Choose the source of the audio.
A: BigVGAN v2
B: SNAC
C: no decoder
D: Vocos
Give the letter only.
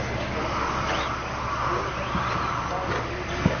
C